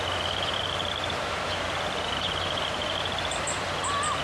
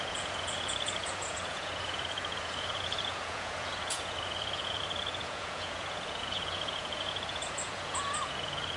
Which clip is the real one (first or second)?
first